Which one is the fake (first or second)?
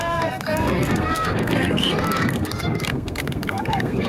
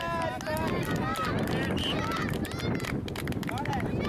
first